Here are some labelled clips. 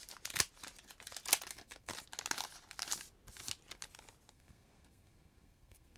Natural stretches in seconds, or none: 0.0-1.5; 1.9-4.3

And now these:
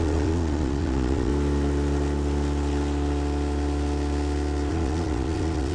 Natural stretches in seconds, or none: 1.3-4.7

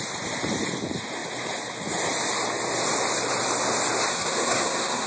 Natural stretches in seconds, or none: 0.0-4.1

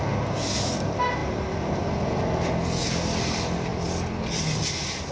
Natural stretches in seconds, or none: 0.0-5.1